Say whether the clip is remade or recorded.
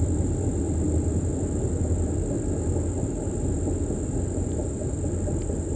recorded